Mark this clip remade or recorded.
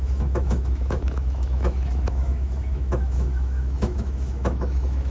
remade